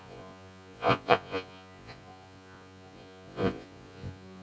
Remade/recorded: remade